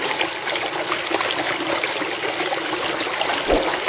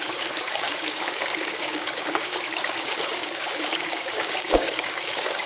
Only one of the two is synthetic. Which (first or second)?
second